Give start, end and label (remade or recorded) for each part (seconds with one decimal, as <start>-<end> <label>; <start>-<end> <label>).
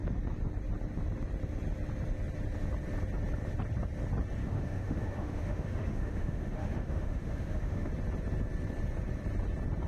0.0-4.4 recorded; 4.4-7.9 remade; 7.9-9.9 recorded